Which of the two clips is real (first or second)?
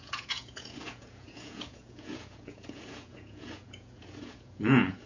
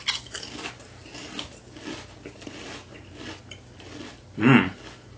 second